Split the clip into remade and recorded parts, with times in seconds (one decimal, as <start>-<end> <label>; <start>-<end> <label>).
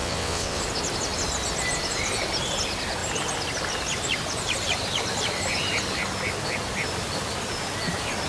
0.0-0.6 remade; 0.6-8.3 recorded